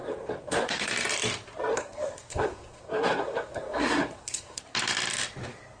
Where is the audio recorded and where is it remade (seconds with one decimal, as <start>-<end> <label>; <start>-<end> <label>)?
0.0-0.9 remade; 0.9-1.7 recorded; 1.7-4.6 remade; 4.6-5.8 recorded